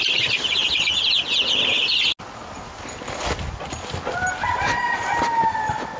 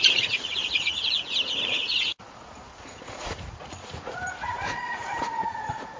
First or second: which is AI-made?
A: second